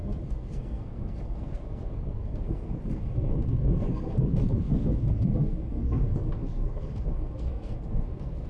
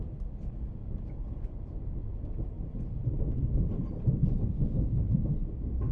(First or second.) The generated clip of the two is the first